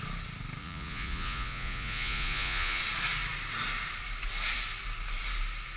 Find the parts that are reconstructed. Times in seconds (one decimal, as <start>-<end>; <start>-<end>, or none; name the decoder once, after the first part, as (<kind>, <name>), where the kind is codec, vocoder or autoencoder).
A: 0.6-2.8 (vocoder, Vocos)